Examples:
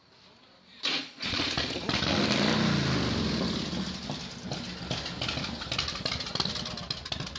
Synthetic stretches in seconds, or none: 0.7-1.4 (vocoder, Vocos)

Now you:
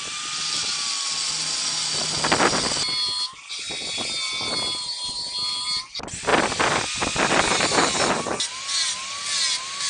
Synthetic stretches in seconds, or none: none

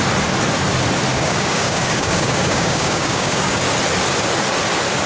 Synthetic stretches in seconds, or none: 1.1-3.6 (codec, DAC)

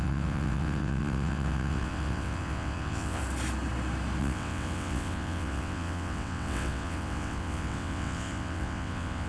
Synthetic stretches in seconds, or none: 0.0-3.2 (vocoder, WaveNeXt); 4.2-9.3

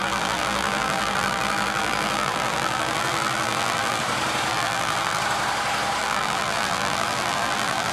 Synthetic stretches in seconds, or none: 0.0-4.0 (vocoder, BigVGAN v2); 4.5-5.2; 6.0-7.9

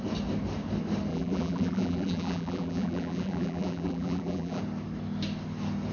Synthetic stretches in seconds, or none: 1.1-4.6 (vocoder, BigVGAN v2)

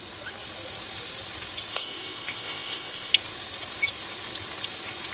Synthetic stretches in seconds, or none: 1.7-3.1 (codec, ZipCodec)

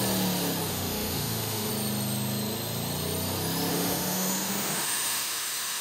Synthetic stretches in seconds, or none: 0.7-1.7 (autoencoder, DAC-VAE); 3.7-5.8